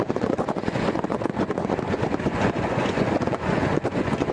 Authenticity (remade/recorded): remade